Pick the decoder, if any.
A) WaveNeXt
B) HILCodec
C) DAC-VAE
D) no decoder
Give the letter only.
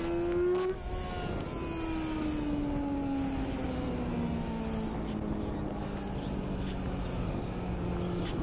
D